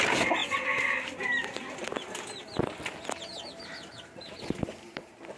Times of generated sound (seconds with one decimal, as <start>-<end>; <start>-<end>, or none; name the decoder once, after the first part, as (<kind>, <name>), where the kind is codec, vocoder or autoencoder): none